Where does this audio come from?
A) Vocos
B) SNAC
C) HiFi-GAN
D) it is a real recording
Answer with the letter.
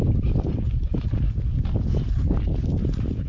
D